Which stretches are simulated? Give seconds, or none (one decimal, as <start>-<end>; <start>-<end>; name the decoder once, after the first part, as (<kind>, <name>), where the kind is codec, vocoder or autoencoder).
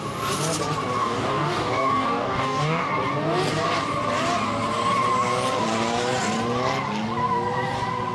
1.0-2.9 (codec, DAC)